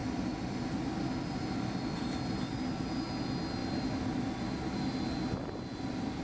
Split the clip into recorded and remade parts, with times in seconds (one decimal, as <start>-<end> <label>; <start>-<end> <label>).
0.0-6.2 recorded